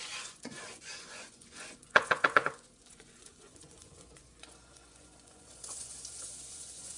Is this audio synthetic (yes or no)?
yes